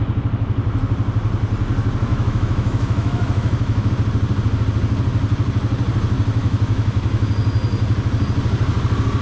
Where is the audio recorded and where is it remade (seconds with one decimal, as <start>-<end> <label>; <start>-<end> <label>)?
0.0-2.1 recorded; 2.1-3.9 remade; 3.9-6.4 recorded; 6.4-7.3 remade; 7.3-9.2 recorded